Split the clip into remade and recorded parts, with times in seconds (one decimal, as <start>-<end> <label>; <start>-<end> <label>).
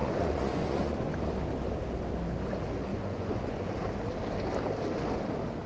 0.0-1.1 remade; 1.1-2.9 recorded; 2.9-3.7 remade; 3.7-5.7 recorded